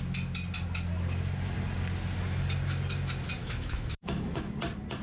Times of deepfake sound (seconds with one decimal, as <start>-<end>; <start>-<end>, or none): 3.4-4.5

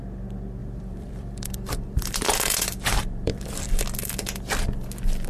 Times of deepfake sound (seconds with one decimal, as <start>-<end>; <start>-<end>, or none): 0.6-3.8

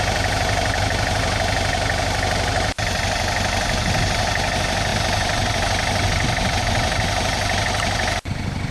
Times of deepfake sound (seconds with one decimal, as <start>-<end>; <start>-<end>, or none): none

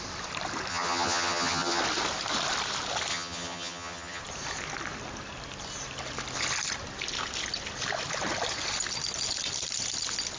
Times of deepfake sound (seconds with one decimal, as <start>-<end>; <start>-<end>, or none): 0.7-1.8; 3.1-4.2